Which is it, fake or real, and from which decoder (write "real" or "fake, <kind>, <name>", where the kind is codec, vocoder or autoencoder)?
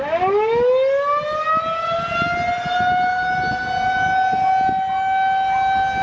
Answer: real